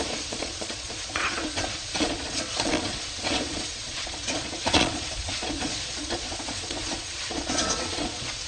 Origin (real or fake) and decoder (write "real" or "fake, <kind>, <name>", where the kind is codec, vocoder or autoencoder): fake, vocoder, Vocos